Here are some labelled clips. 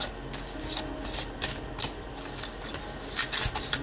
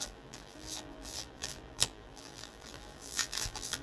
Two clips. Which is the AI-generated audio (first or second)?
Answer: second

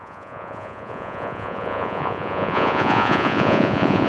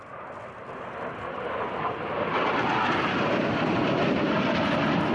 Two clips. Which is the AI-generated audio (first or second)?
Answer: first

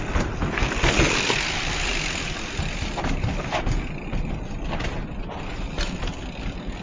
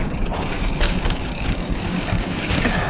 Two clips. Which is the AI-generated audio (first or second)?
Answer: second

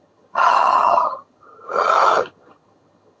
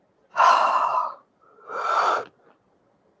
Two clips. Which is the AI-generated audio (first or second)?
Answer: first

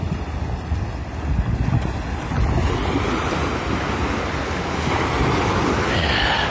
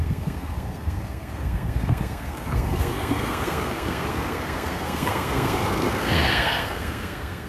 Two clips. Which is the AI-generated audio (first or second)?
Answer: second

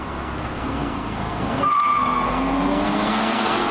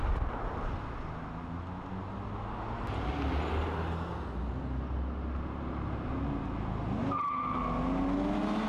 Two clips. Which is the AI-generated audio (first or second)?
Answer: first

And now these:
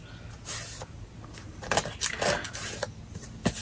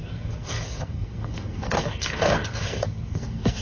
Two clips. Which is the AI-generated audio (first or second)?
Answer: second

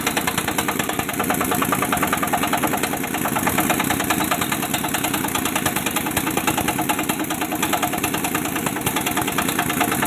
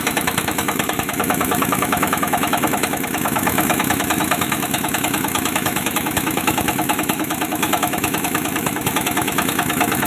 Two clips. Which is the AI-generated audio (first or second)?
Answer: second